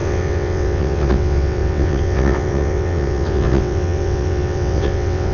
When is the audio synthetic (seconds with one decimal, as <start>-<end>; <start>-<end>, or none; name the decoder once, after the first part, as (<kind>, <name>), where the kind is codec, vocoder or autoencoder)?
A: 0.0-5.3 (vocoder, WaveNeXt)